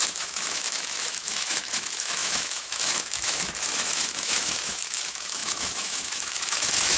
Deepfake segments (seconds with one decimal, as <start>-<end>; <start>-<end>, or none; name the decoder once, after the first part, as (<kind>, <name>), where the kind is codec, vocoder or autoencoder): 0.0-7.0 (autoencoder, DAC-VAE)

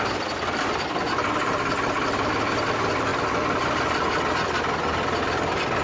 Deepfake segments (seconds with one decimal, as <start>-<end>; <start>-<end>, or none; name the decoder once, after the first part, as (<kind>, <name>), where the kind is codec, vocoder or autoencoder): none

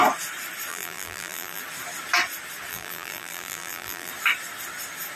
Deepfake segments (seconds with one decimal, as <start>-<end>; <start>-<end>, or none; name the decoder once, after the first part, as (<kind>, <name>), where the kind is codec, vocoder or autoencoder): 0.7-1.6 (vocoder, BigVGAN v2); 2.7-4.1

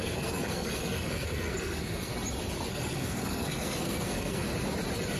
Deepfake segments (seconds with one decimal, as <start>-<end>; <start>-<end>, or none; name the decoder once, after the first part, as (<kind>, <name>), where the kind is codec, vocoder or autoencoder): 0.0-2.1 (codec, SNAC); 2.7-4.5

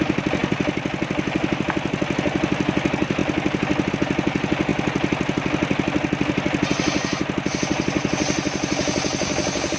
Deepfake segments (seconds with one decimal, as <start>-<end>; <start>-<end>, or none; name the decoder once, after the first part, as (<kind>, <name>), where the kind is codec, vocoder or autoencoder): none